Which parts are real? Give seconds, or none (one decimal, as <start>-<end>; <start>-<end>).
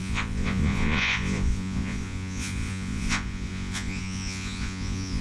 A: none